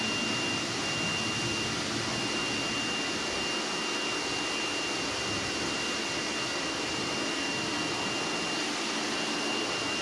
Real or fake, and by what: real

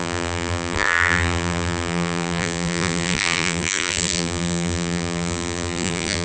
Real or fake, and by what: fake, vocoder, BigVGAN v2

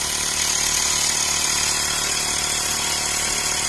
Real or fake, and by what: real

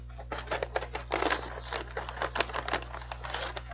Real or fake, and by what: real